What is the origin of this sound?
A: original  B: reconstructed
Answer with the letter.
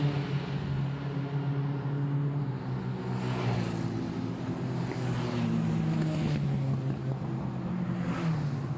A